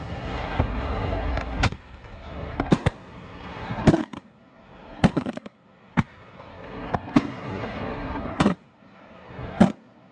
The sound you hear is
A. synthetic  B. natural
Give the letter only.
A